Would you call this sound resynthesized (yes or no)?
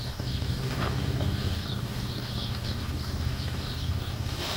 yes